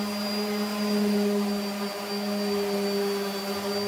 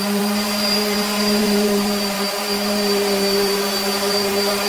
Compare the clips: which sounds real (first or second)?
first